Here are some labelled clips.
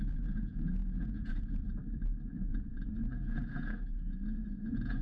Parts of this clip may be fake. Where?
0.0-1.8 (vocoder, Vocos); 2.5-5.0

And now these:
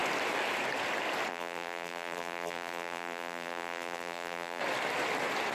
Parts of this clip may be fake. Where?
1.3-4.6 (vocoder, BigVGAN v2)

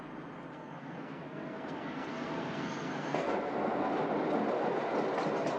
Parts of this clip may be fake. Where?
0.5-3.9 (codec, SNAC)

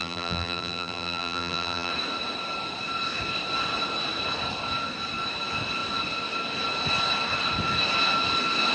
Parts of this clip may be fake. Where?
0.0-1.9 (vocoder, BigVGAN v2)

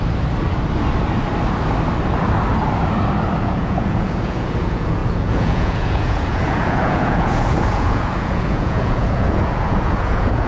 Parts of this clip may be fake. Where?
3.4-10.5 (vocoder, Vocos)

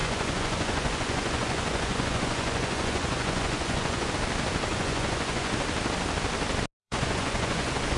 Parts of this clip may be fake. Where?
0.0-4.1 (vocoder, Vocos); 4.7-5.5; 6.8-8.0